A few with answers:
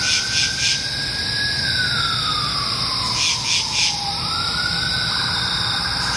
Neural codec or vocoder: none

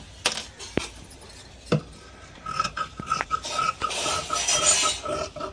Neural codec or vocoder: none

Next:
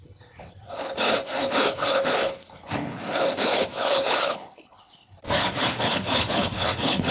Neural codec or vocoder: codec, HILCodec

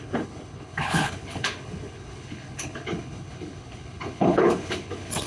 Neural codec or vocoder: codec, HILCodec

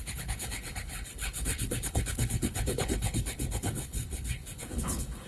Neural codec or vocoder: codec, HILCodec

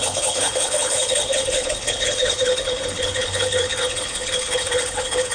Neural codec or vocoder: codec, HILCodec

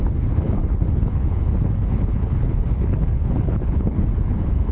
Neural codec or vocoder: codec, HILCodec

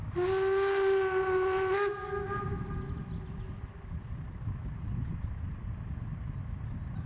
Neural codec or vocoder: none